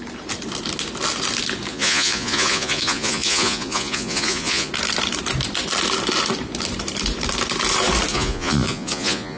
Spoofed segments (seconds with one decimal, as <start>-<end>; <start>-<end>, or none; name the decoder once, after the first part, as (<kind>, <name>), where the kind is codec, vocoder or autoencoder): 1.7-4.7 (vocoder, Vocos); 8.1-9.4